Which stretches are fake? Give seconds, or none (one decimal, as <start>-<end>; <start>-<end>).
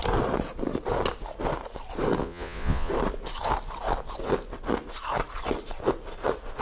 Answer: 2.2-2.9